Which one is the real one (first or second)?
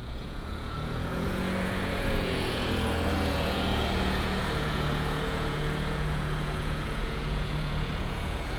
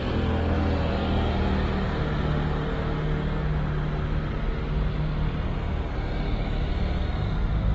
second